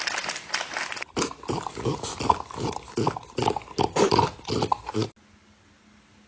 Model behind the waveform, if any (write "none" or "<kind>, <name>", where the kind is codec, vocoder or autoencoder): none